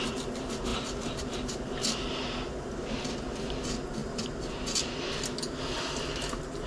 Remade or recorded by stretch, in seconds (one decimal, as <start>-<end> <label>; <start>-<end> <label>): 0.0-6.7 recorded

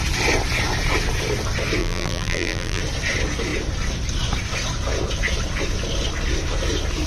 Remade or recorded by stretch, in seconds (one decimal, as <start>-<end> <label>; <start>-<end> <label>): 0.0-1.8 recorded; 1.8-2.8 remade; 2.8-7.1 recorded